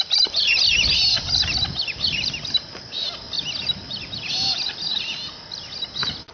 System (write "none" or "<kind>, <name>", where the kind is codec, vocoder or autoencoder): none